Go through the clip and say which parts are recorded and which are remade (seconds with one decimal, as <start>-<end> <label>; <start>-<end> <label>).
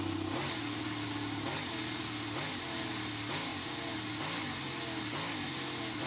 0.0-6.1 recorded